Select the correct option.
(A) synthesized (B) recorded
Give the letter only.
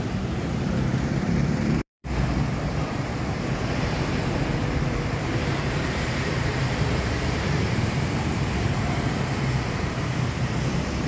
A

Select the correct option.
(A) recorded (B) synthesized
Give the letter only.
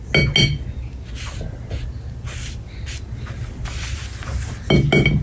A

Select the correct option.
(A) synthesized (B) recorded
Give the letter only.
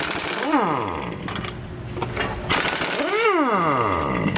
B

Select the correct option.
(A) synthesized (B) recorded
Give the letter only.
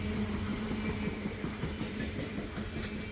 B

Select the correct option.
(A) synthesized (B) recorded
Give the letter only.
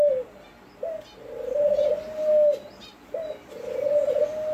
B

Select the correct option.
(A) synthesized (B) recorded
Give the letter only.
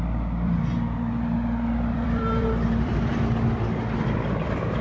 A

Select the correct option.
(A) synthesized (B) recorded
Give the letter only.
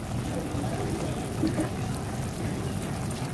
B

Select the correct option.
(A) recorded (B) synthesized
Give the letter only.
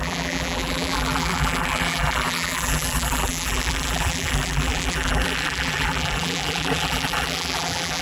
B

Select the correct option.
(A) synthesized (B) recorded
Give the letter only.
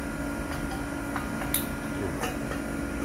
B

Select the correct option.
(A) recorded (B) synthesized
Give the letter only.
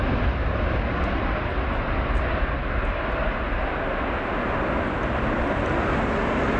A